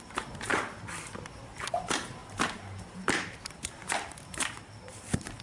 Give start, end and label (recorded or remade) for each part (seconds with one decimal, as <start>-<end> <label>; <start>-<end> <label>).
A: 0.0-5.4 remade